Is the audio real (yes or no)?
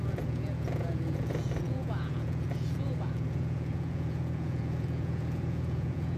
no